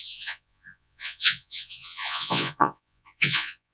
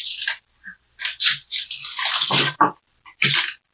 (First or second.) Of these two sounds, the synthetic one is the first